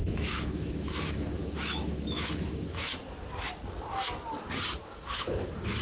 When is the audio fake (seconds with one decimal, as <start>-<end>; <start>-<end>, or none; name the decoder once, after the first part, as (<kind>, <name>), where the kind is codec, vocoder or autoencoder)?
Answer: 0.0-2.9 (autoencoder, DAC-VAE); 4.8-5.8